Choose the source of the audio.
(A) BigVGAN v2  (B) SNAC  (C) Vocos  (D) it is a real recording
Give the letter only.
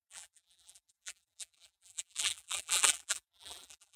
A